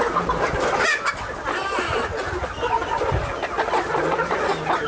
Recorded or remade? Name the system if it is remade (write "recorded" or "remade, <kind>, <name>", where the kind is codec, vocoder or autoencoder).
recorded